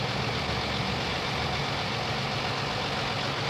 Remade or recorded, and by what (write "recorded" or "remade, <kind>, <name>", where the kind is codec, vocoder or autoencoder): recorded